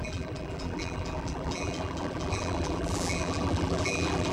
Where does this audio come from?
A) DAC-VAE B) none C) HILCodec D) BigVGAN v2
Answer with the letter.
D